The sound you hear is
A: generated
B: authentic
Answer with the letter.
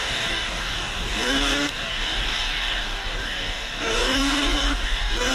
A